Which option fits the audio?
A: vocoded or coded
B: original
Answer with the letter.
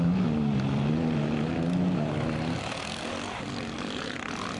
B